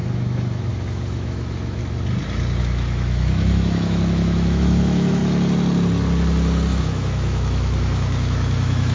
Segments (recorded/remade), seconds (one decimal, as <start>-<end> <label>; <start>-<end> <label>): 0.0-1.8 remade; 1.8-2.6 recorded; 2.6-5.2 remade; 5.2-6.8 recorded; 6.8-8.9 remade